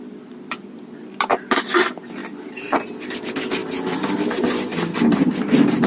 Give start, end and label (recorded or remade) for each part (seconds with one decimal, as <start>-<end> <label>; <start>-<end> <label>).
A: 0.0-2.2 recorded; 2.2-2.8 remade; 2.8-3.6 recorded; 3.6-4.4 remade; 4.4-5.9 recorded